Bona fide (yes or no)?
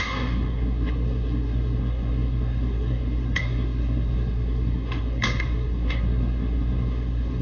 no